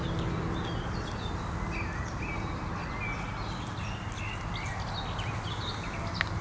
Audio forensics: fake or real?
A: real